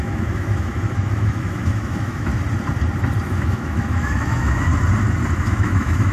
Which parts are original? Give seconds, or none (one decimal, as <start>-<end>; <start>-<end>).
2.3-3.3; 4.7-5.4